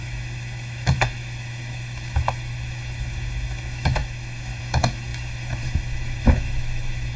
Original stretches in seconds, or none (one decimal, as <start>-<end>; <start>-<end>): none